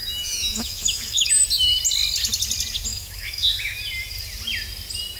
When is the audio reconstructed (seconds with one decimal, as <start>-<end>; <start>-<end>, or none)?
0.0-1.3; 2.9-3.8